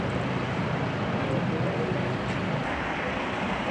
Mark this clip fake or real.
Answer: real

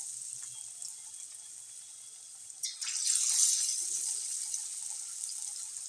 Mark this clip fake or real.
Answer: real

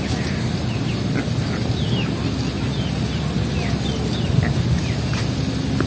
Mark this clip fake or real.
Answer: real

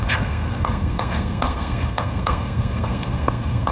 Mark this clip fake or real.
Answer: fake